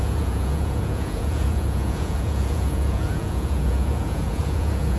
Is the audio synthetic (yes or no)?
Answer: yes